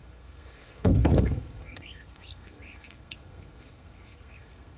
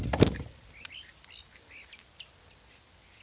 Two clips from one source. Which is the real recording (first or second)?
second